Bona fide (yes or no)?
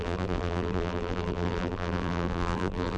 no